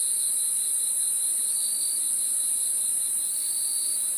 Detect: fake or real real